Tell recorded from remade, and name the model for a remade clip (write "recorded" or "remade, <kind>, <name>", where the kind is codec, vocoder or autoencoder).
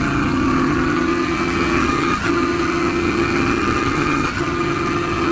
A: remade, vocoder, HiFi-GAN